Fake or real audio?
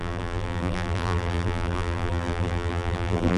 fake